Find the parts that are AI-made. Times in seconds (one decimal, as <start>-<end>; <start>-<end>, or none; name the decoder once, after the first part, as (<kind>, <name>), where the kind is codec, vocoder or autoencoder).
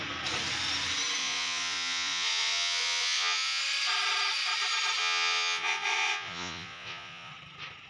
1.2-3.6 (vocoder, Vocos); 5.0-7.3